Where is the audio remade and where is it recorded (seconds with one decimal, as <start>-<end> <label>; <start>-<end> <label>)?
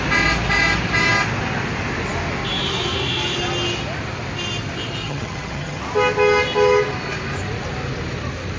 0.0-5.0 recorded; 5.0-5.8 remade; 5.8-8.6 recorded